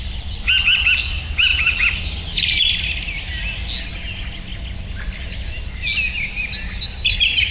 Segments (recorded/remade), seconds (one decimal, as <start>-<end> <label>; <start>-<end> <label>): 0.0-7.5 recorded